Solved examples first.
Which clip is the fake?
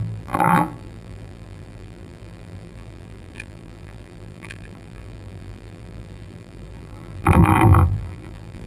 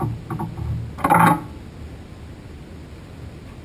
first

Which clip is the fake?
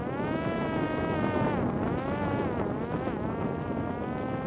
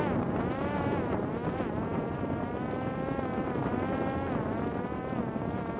second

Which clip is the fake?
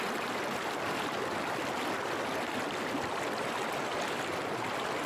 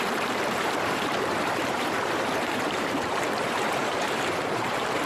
second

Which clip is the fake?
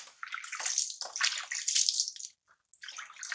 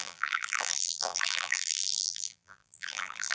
second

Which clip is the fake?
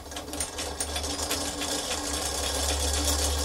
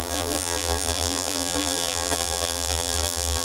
second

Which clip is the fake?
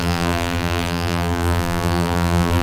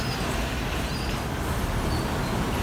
first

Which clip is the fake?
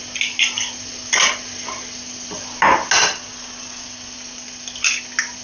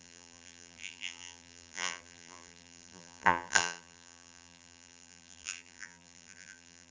second